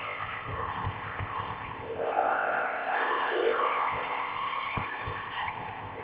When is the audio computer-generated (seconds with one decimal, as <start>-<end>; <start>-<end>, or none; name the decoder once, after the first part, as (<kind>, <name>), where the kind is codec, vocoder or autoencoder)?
0.0-6.0 (codec, ZipCodec)